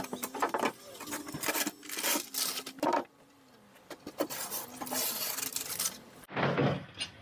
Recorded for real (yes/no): yes